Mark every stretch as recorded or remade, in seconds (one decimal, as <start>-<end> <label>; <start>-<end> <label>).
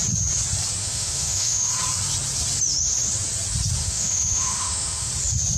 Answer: 0.0-0.8 recorded; 0.8-1.7 remade; 1.7-3.8 recorded; 3.8-5.1 remade; 5.1-5.6 recorded